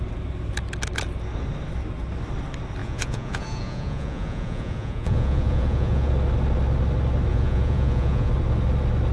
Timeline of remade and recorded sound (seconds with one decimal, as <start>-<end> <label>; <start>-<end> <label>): 0.0-2.8 recorded; 2.8-6.1 remade; 6.1-7.3 recorded; 7.3-8.3 remade; 8.3-9.1 recorded